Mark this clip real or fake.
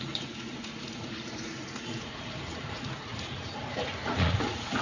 fake